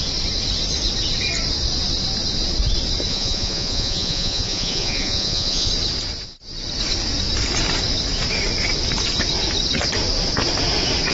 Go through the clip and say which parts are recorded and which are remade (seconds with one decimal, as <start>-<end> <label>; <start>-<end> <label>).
0.0-3.1 recorded; 3.1-5.7 remade; 5.7-11.1 recorded

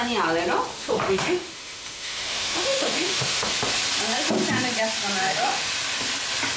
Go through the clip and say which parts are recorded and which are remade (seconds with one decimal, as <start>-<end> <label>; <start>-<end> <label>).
0.0-0.7 recorded; 0.7-3.5 remade; 3.5-5.2 recorded; 5.2-5.7 remade; 5.7-6.6 recorded